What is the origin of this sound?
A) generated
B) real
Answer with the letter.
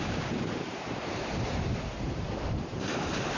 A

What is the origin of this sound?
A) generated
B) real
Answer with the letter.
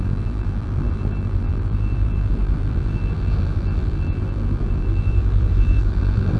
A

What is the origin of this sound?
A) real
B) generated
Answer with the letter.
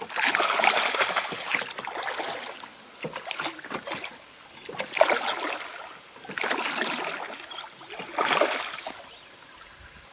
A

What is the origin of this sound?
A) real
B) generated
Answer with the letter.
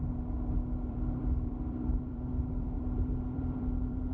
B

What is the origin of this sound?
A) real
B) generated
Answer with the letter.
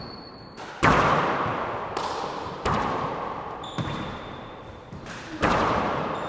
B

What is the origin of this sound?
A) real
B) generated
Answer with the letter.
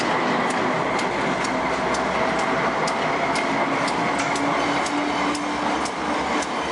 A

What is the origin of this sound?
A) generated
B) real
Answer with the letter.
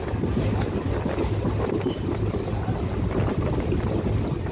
B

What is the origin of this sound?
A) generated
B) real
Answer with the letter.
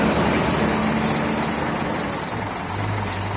B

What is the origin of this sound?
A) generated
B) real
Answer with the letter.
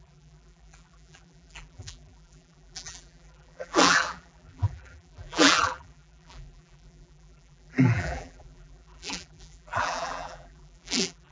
A